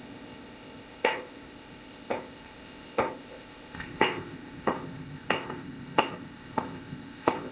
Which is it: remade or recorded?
remade